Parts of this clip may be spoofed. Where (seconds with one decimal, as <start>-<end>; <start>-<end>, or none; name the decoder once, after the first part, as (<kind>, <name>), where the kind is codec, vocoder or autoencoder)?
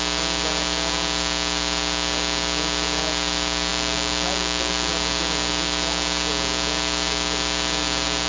none